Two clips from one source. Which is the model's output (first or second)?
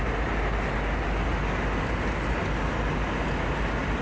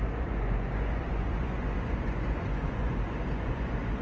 second